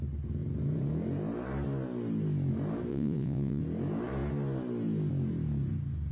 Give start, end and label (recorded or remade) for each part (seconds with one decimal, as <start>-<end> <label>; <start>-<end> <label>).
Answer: 0.0-2.9 recorded; 2.9-3.6 remade; 3.6-6.1 recorded